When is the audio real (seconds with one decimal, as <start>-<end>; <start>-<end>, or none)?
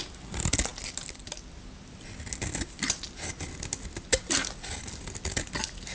0.0-5.9